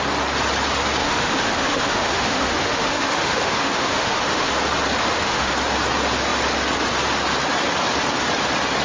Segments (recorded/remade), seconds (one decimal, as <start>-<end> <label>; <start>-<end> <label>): 0.0-1.0 recorded; 1.0-4.5 remade; 4.5-5.0 recorded; 5.0-5.5 remade; 5.5-8.8 recorded

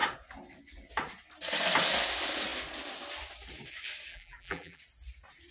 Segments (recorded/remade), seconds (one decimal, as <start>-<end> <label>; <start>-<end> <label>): 0.0-4.1 recorded; 4.1-4.8 remade; 4.8-5.5 recorded

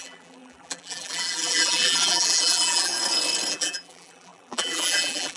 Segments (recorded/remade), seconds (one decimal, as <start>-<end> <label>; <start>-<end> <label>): 0.0-2.9 remade; 2.9-3.5 recorded; 3.5-5.4 remade

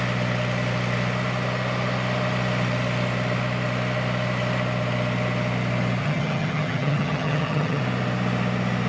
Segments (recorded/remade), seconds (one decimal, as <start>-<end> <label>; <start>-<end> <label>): 0.0-6.0 recorded; 6.0-7.8 remade; 7.8-8.9 recorded

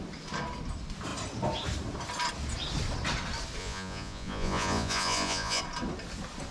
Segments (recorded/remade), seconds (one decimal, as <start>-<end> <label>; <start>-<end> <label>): 0.0-3.6 recorded; 3.6-5.6 remade; 5.6-6.5 recorded

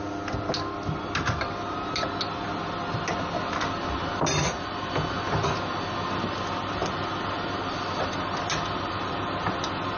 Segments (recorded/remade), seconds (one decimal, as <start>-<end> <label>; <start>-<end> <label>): 0.0-4.4 recorded; 4.4-4.9 remade; 4.9-10.0 recorded